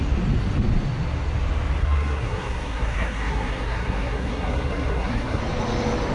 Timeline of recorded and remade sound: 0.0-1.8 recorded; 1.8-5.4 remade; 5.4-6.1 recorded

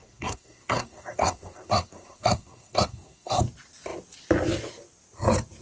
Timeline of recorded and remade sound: 0.0-3.4 remade; 3.4-5.6 recorded

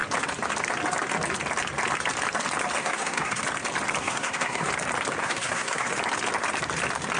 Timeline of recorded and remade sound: 0.0-2.8 recorded; 2.8-3.4 remade; 3.4-4.0 recorded; 4.0-4.7 remade; 4.7-5.2 recorded; 5.2-5.9 remade; 5.9-7.2 recorded

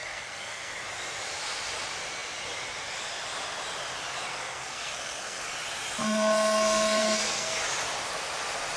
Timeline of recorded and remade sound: 0.0-0.7 remade; 0.7-4.3 recorded; 4.3-5.4 remade; 5.4-6.0 recorded; 6.0-7.6 remade; 7.6-8.8 recorded